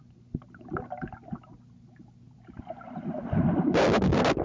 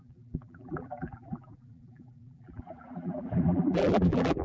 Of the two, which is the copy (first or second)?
second